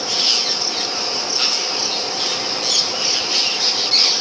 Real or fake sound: real